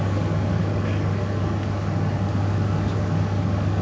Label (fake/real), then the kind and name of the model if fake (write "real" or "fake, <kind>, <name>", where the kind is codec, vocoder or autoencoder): fake, codec, DAC